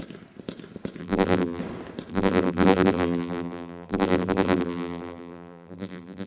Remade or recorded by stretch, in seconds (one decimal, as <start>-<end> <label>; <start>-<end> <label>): 0.0-1.0 recorded; 1.0-1.6 remade; 1.6-2.1 recorded; 2.1-6.3 remade